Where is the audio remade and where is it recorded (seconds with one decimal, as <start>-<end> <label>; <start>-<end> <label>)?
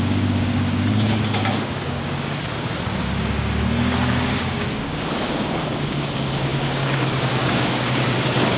0.0-2.4 remade; 2.4-3.0 recorded; 3.0-8.6 remade